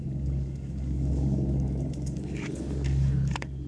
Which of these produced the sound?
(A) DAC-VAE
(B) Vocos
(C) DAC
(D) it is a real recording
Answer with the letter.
C